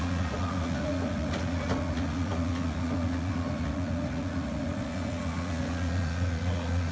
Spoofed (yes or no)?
yes